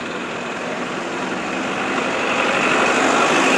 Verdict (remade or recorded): recorded